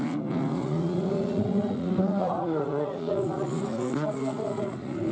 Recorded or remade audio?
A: remade